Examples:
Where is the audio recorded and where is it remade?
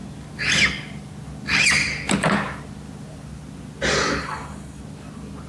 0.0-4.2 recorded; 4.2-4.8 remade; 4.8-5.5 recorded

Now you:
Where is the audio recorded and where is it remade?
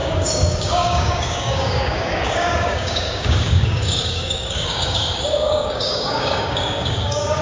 0.0-7.4 remade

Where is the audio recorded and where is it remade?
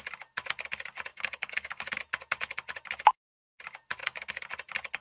0.0-1.1 recorded; 1.1-1.9 remade; 1.9-4.0 recorded; 4.0-4.5 remade; 4.5-5.0 recorded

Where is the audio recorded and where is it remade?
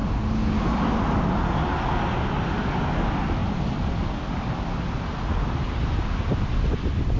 0.0-7.2 recorded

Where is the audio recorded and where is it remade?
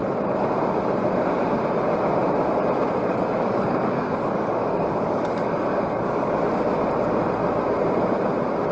0.0-3.0 recorded; 3.0-6.3 remade; 6.3-8.7 recorded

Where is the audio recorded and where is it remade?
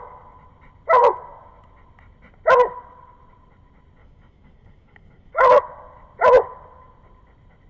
0.0-4.0 recorded; 4.0-5.6 remade; 5.6-7.7 recorded